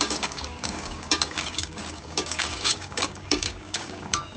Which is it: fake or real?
fake